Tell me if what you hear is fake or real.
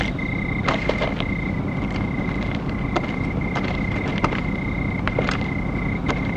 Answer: real